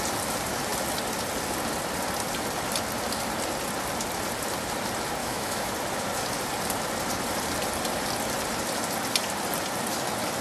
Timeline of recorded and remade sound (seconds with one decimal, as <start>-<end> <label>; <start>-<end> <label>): 0.0-5.2 recorded; 5.2-5.7 remade; 5.7-10.4 recorded